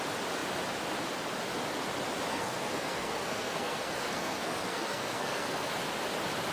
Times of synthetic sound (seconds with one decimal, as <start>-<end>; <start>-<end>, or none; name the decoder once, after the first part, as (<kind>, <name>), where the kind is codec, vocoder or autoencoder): 2.3-5.7 (codec, SNAC)